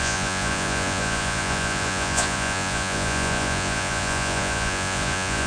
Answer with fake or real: fake